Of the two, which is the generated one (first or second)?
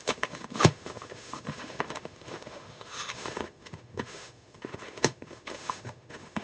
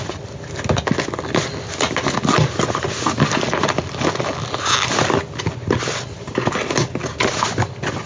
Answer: first